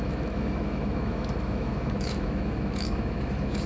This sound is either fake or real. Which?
fake